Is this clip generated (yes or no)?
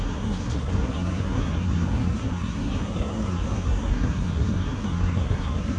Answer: yes